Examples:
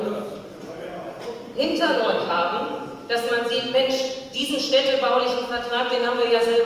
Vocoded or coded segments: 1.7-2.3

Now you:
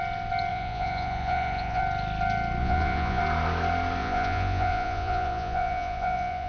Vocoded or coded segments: 0.5-1.8; 2.6-3.2; 4.0-6.5

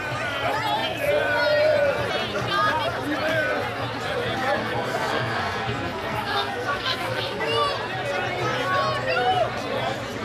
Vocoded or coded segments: 4.6-7.4

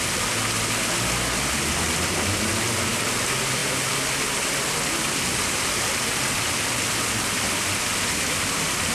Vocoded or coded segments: none

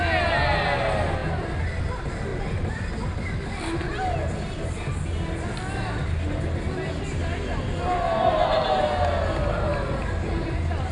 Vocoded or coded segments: none

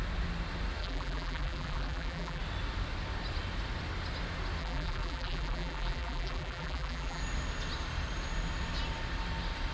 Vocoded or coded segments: 0.8-2.4; 4.6-7.2

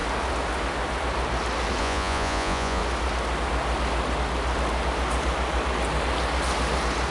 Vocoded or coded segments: 1.8-2.8

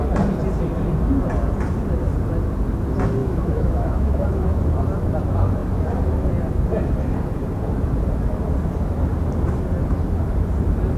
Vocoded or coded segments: 3.2-4.6